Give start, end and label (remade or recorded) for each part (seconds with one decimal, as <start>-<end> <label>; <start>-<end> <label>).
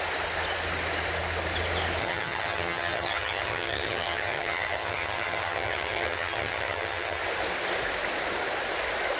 0.0-2.0 recorded; 2.0-7.2 remade; 7.2-9.2 recorded